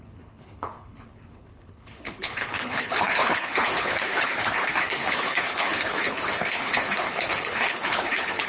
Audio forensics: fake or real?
fake